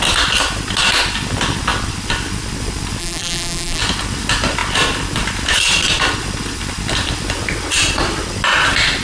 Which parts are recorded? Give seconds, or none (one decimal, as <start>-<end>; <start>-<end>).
0.0-3.0; 3.8-9.0